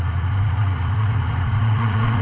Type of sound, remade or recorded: remade